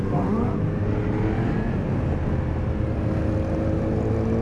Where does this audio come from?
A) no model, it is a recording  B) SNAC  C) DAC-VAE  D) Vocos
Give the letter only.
A